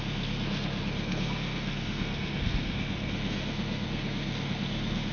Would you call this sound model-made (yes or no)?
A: yes